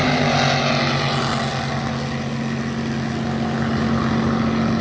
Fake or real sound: real